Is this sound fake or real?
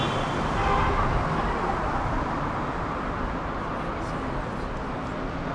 real